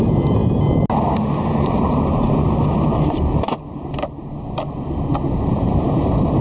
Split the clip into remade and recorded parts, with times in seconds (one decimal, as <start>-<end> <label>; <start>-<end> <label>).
0.0-0.4 remade; 0.4-1.5 recorded; 1.5-6.4 remade